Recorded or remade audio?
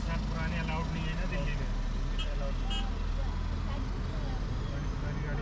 recorded